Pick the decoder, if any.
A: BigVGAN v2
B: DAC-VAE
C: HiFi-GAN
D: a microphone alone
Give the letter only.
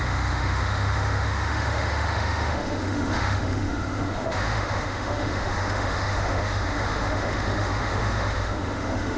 B